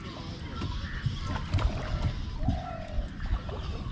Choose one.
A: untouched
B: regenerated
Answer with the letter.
A